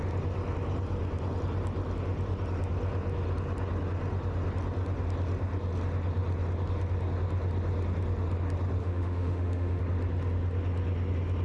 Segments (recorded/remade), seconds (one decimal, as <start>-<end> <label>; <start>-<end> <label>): 0.0-8.8 recorded; 8.8-9.8 remade; 9.8-11.4 recorded